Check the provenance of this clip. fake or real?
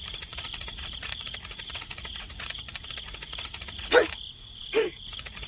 fake